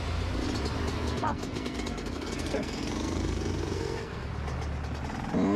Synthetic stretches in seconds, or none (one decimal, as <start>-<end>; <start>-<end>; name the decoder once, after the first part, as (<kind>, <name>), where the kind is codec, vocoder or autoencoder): 0.9-4.3 (codec, SNAC)